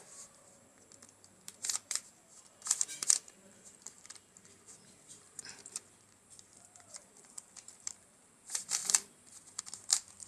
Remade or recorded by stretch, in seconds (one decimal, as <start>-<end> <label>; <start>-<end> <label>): 0.0-8.8 remade; 8.8-9.6 recorded; 9.6-10.3 remade

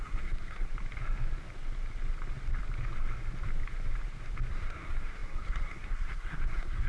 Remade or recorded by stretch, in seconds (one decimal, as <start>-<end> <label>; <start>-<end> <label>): 0.0-0.7 remade; 0.7-4.5 recorded; 4.5-6.9 remade

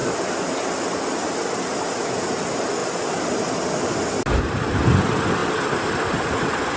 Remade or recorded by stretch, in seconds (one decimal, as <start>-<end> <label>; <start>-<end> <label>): 0.0-6.8 recorded

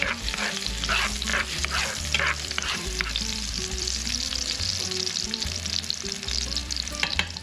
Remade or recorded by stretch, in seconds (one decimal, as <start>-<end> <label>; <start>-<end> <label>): 0.0-1.3 recorded; 1.3-5.7 remade; 5.7-6.6 recorded; 6.6-7.4 remade

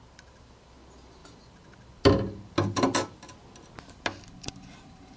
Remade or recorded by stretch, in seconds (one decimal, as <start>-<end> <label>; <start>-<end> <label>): 0.0-5.2 recorded

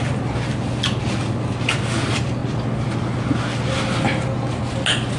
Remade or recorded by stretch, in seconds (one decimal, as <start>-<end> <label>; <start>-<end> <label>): 0.0-5.2 recorded

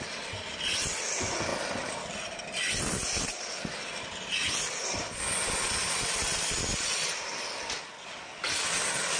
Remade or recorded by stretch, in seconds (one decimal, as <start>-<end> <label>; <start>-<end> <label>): 0.0-9.2 recorded